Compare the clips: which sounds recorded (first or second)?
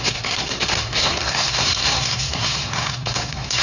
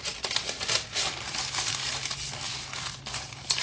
second